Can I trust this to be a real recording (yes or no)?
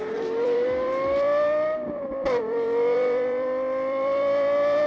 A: no